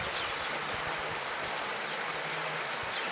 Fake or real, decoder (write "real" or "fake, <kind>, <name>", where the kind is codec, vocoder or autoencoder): real